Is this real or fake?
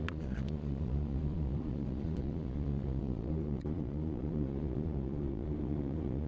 fake